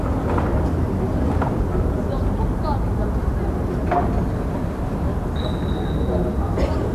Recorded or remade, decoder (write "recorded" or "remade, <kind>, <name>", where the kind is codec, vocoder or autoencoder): recorded